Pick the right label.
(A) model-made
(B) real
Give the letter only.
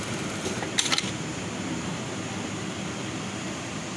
B